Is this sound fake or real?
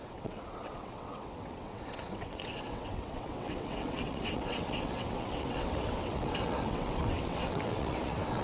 fake